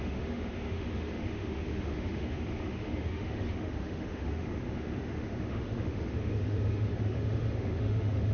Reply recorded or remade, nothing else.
remade